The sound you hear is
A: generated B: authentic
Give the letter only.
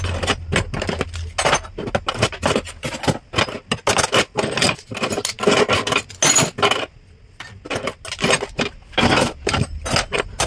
B